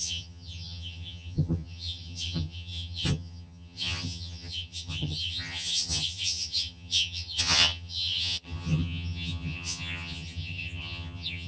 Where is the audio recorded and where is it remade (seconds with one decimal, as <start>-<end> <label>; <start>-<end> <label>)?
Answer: 0.0-11.5 remade